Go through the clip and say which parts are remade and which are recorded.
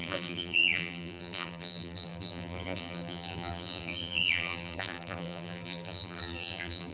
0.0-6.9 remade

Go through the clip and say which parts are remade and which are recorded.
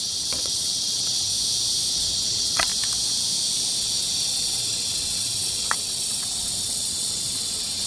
0.0-1.3 remade; 1.3-1.9 recorded; 1.9-2.7 remade; 2.7-3.8 recorded; 3.8-7.9 remade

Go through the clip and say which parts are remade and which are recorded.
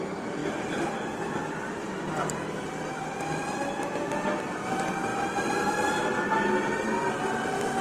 0.0-0.4 recorded; 0.4-2.3 remade; 2.3-5.1 recorded; 5.1-6.1 remade; 6.1-7.8 recorded